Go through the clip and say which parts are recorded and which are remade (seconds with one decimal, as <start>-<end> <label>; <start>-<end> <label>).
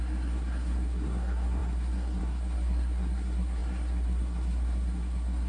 0.0-5.5 remade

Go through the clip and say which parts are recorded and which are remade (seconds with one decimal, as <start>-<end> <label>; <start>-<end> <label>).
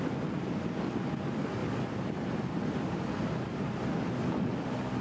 0.0-5.0 recorded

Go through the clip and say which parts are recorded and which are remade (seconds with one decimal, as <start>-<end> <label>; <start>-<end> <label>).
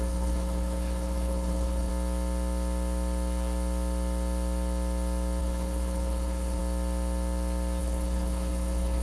0.0-1.9 remade; 1.9-5.4 recorded; 5.4-6.6 remade; 6.6-7.8 recorded; 7.8-9.0 remade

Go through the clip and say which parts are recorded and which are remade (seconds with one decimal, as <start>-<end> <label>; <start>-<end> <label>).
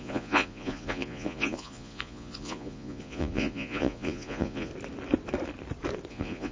0.0-4.7 remade; 4.7-6.1 recorded; 6.1-6.5 remade